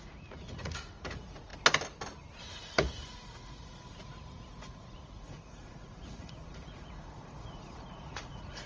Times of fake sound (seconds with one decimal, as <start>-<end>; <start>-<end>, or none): 0.0-1.5; 2.4-8.7